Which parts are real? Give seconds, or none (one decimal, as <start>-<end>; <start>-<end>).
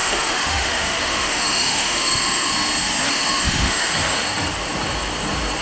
2.5-3.1; 3.9-5.6